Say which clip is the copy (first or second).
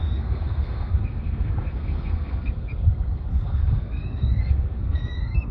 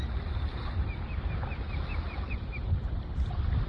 first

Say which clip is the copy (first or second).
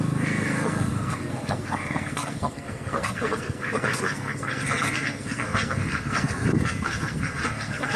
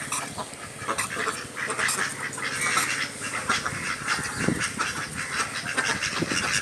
first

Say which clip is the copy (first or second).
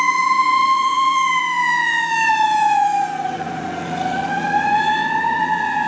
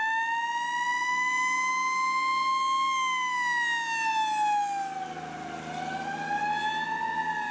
first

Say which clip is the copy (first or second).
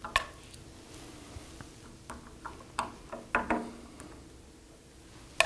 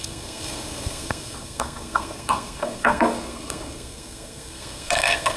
second